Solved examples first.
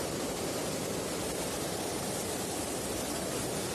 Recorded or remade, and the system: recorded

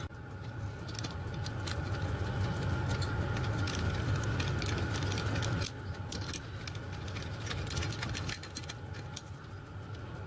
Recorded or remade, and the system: recorded